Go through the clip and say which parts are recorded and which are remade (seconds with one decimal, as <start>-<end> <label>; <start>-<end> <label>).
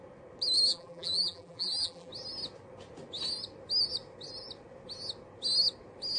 0.0-0.7 recorded; 0.7-2.1 remade; 2.1-6.2 recorded